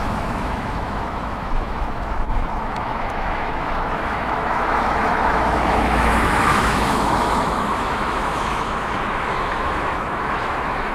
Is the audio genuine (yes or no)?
no